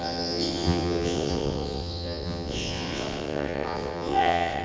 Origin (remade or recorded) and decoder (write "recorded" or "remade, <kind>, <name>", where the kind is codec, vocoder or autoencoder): remade, vocoder, WaveNeXt